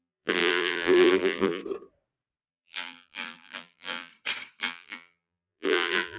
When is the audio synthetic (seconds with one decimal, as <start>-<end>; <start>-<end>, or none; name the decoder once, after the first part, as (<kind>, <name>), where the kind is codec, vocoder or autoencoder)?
0.0-1.6 (vocoder, BigVGAN v2); 2.5-4.1; 4.6-6.2